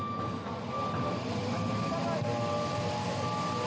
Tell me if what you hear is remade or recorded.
recorded